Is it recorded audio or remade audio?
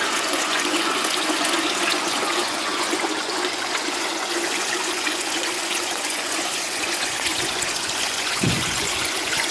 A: remade